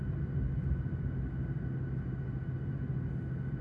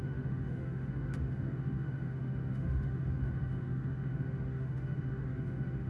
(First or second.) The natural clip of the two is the first